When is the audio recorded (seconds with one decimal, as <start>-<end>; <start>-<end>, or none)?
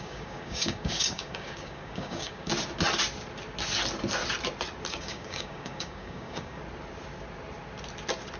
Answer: 2.5-4.9; 6.6-8.4